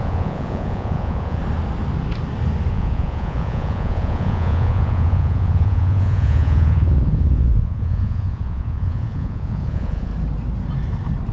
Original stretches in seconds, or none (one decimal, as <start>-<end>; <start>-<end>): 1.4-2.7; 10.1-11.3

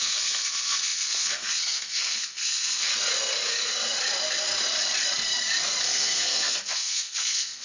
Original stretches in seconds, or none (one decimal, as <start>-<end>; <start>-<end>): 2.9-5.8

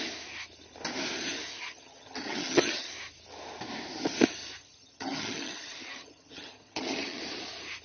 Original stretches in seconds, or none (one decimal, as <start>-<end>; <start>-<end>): 0.0-1.5; 2.9-4.6; 7.2-7.8

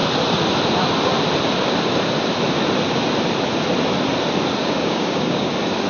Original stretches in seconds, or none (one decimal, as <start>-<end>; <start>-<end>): 0.0-4.6; 5.5-5.9

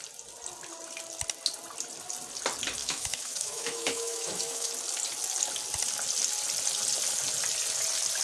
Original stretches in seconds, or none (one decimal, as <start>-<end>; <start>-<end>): 0.0-2.8; 4.7-8.2

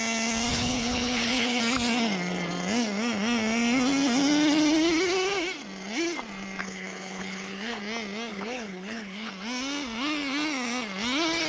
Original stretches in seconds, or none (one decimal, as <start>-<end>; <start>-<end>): 0.0-0.5; 1.6-6.6; 7.8-8.3; 9.3-11.5